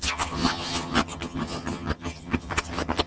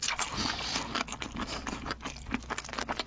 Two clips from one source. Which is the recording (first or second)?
second